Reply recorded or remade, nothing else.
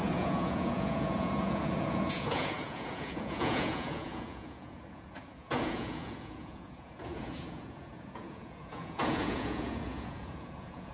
remade